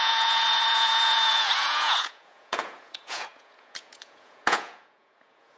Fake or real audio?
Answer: fake